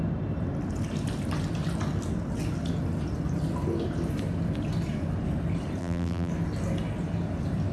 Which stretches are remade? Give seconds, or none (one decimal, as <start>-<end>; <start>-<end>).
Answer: 5.8-6.3